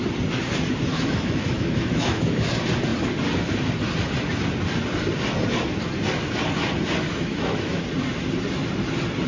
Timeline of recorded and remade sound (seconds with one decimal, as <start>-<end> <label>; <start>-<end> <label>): 0.0-0.9 recorded; 0.9-2.5 remade; 2.5-7.1 recorded; 7.1-7.8 remade; 7.8-9.3 recorded